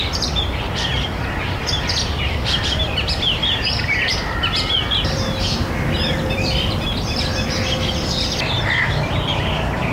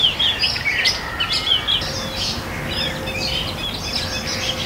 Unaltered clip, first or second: second